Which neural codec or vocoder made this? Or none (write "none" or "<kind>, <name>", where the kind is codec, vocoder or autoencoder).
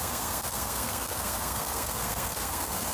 codec, SNAC